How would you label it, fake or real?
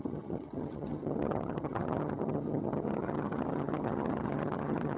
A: fake